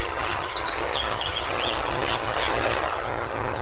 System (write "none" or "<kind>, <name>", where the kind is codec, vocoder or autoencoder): vocoder, HiFi-GAN